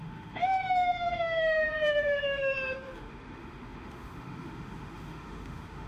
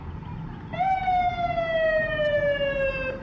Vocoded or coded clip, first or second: first